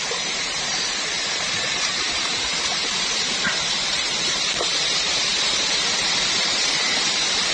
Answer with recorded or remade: remade